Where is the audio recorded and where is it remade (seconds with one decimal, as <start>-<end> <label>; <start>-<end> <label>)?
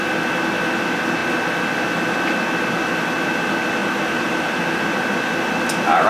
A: 0.0-3.8 recorded; 3.8-4.6 remade; 4.6-6.1 recorded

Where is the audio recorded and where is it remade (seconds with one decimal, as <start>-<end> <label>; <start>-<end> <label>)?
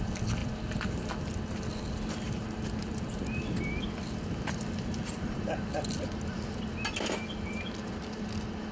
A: 0.0-8.7 recorded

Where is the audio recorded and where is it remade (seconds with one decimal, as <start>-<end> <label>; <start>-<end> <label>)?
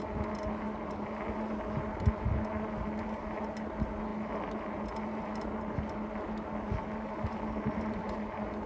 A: 0.0-8.7 recorded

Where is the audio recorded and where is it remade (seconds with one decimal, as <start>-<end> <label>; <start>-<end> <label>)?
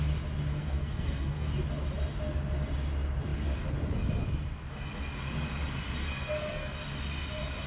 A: 0.0-0.5 recorded; 0.5-1.5 remade; 1.5-6.0 recorded; 6.0-6.7 remade; 6.7-7.7 recorded